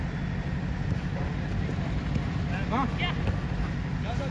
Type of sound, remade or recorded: recorded